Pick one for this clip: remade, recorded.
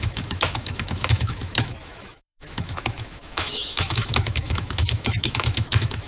remade